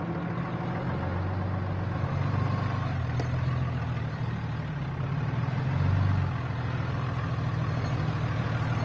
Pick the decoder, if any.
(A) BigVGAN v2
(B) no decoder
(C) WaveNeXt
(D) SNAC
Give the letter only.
B